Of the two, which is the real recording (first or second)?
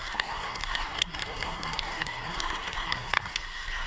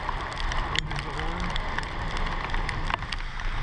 second